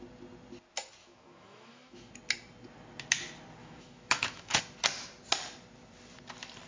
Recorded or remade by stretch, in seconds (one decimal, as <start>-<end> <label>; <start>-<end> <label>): 0.0-1.0 recorded; 1.0-2.1 remade; 2.1-3.6 recorded; 3.6-4.6 remade; 4.6-6.7 recorded